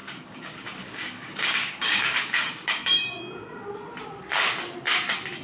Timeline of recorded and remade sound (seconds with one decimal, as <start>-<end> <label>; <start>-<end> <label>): 0.0-3.2 remade; 3.2-5.4 recorded